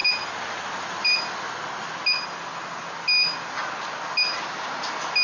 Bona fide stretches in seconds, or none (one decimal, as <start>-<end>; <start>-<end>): 2.0-5.2